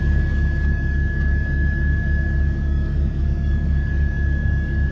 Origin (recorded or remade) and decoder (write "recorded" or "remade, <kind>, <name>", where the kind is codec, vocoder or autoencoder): remade, codec, DAC